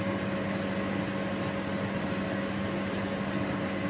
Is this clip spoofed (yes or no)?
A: no